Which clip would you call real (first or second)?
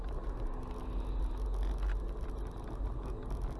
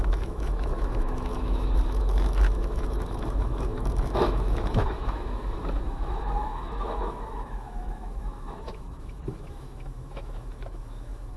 first